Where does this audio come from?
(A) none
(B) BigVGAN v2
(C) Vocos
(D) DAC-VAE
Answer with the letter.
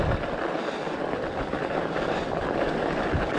B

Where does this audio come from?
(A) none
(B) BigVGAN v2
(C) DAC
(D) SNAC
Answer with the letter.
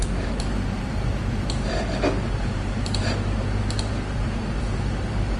B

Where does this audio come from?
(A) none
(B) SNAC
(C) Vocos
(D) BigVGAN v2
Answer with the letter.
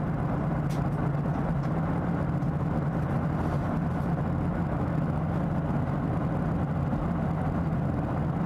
A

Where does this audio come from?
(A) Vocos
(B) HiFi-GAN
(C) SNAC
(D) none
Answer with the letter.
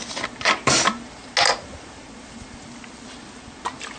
D